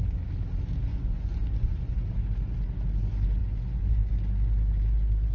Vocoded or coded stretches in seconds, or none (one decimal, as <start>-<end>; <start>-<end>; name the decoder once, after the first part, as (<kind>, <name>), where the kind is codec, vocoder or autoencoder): 0.9-1.9 (vocoder, Vocos); 3.4-4.1